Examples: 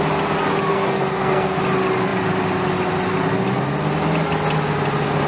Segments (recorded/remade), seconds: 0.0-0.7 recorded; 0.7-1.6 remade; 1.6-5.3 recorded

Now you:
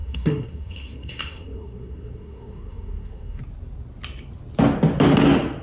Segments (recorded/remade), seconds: 0.0-3.4 remade; 3.4-5.6 recorded

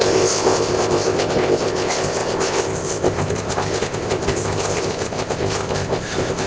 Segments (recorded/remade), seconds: 0.0-6.5 remade

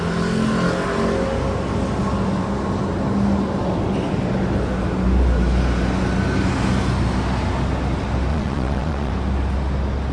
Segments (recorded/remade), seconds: 0.0-8.3 recorded; 8.3-9.1 remade; 9.1-10.1 recorded

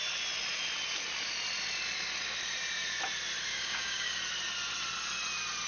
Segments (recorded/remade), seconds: 0.0-3.5 recorded; 3.5-4.2 remade; 4.2-5.7 recorded

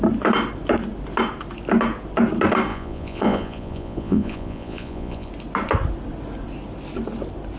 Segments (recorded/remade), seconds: 0.0-2.7 recorded; 2.7-5.3 remade; 5.3-7.6 recorded

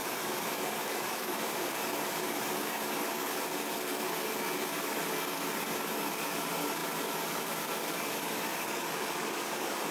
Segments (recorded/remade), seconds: 0.0-9.9 remade

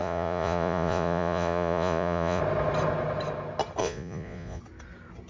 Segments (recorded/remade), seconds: 0.0-2.4 remade; 2.4-3.8 recorded; 3.8-4.6 remade; 4.6-5.3 recorded